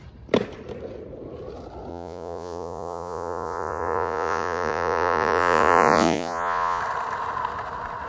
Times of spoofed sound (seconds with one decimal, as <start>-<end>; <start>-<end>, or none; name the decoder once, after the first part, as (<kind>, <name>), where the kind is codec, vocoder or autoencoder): 1.9-6.8 (vocoder, Vocos)